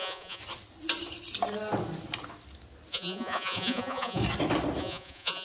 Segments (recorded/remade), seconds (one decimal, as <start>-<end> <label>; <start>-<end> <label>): 0.0-0.4 remade; 0.4-2.9 recorded; 2.9-4.2 remade; 4.2-4.8 recorded; 4.8-5.4 remade